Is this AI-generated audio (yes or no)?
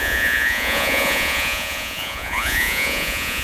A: yes